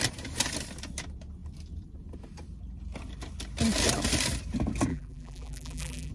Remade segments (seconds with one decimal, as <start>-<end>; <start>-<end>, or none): 4.9-6.1

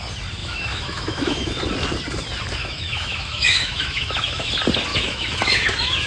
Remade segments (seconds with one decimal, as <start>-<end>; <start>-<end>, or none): 0.4-1.6; 2.6-4.5; 4.9-6.1